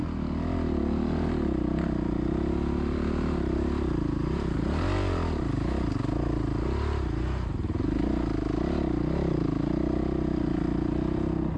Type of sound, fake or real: real